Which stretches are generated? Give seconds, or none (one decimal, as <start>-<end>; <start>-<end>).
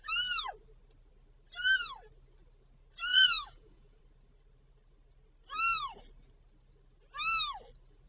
3.1-4.0